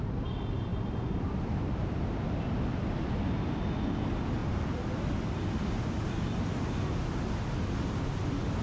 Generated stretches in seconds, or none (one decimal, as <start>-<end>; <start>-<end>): none